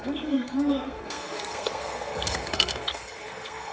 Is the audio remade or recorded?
remade